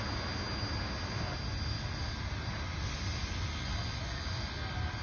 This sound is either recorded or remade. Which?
recorded